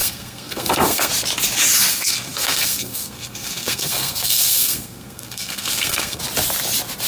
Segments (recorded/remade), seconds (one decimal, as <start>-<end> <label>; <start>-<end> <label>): 0.0-1.1 remade; 1.1-1.9 recorded; 1.9-6.2 remade; 6.2-7.1 recorded